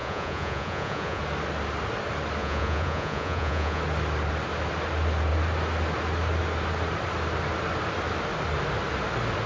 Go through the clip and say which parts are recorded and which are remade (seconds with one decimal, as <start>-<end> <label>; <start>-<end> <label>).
0.0-1.2 remade; 1.2-2.4 recorded; 2.4-3.8 remade; 3.8-9.5 recorded